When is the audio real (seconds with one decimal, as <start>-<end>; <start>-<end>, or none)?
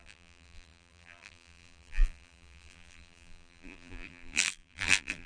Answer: none